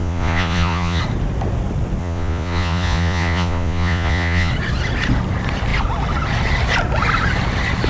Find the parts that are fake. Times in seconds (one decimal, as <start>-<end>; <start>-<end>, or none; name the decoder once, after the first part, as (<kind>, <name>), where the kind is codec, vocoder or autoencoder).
0.0-1.0 (vocoder, Vocos); 2.0-4.5